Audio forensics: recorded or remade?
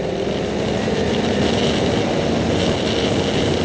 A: recorded